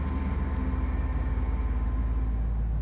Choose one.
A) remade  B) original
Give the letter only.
B